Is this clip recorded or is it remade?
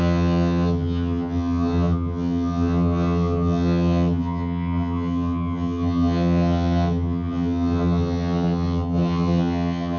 remade